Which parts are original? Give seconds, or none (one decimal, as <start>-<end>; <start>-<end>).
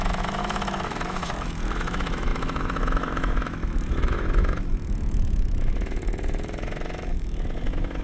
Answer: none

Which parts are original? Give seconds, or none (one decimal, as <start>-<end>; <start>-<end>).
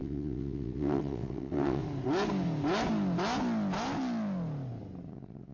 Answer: 1.8-5.1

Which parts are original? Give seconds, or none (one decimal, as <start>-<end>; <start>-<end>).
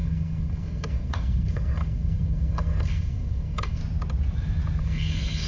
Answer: 3.8-4.8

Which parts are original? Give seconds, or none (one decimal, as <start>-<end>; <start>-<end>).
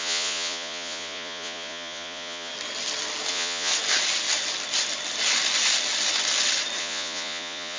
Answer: 2.5-3.3; 3.7-6.8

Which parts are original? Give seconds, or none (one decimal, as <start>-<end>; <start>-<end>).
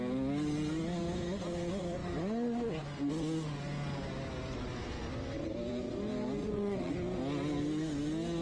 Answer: 0.0-6.4; 6.9-8.4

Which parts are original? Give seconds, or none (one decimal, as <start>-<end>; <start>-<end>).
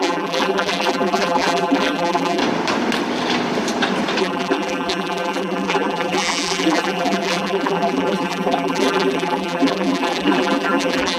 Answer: 2.4-4.2